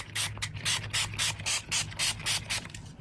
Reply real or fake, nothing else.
real